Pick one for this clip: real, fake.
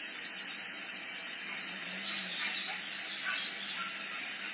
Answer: real